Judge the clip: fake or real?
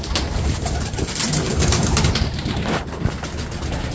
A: real